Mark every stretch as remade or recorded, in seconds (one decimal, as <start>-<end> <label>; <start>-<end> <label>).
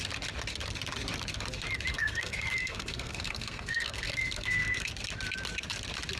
0.0-1.9 recorded; 1.9-4.9 remade; 4.9-6.2 recorded